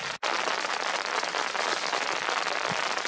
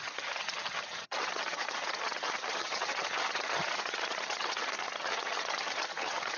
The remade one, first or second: second